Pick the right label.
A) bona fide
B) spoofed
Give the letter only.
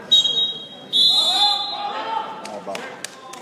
A